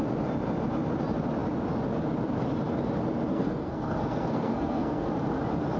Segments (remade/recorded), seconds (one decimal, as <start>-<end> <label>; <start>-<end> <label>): 0.0-3.3 recorded; 3.3-5.1 remade; 5.1-5.8 recorded